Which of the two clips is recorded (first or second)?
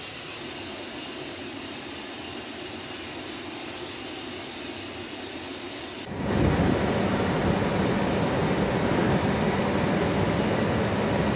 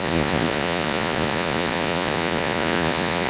first